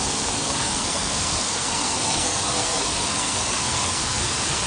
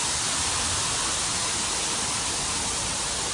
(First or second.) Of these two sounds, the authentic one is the second